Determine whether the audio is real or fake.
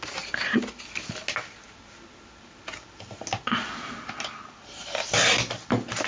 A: real